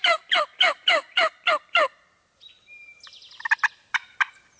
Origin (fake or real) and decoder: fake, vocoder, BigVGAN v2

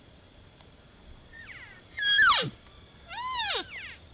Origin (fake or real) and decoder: fake, vocoder, BigVGAN v2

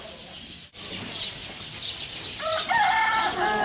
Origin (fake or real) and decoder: real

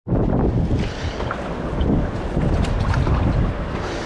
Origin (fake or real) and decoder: real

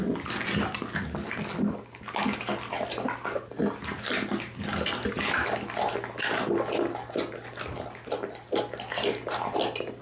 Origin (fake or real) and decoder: real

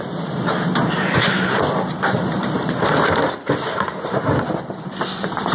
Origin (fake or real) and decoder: fake, vocoder, BigVGAN v2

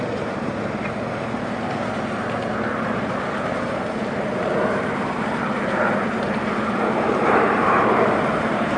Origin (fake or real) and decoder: fake, vocoder, BigVGAN v2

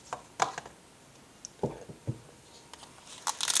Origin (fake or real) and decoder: real